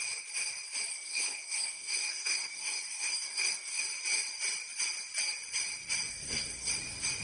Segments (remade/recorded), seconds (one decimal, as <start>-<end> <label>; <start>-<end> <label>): 0.0-0.9 recorded; 0.9-3.8 remade; 3.8-6.1 recorded; 6.1-6.7 remade; 6.7-7.2 recorded